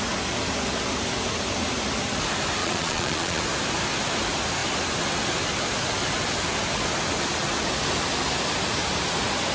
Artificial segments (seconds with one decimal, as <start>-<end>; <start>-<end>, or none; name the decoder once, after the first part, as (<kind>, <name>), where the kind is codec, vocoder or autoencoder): 2.6-3.4 (vocoder, Vocos)

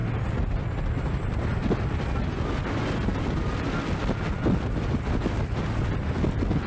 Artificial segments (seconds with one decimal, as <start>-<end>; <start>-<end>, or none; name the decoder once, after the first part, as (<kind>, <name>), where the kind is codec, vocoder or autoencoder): none

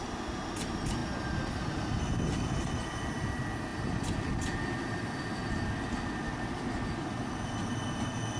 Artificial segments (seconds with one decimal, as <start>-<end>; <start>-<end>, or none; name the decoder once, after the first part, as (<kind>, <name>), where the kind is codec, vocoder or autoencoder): none

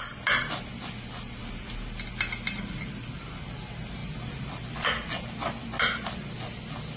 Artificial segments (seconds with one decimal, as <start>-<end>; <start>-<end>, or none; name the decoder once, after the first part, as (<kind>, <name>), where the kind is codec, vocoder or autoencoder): none

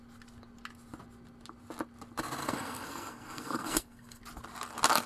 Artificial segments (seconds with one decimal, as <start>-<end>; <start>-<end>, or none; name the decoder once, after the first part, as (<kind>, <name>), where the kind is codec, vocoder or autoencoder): 2.4-4.2 (codec, SNAC)